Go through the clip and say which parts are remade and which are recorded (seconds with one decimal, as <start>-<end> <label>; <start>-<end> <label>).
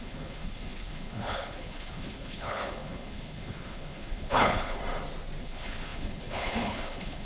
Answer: 0.0-4.8 remade; 4.8-5.4 recorded; 5.4-7.2 remade